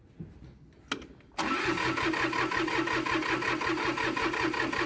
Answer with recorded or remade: recorded